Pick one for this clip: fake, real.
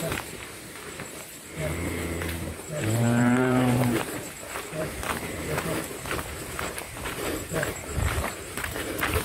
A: fake